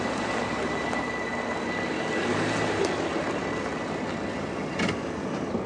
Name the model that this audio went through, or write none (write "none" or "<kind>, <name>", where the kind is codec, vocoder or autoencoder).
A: none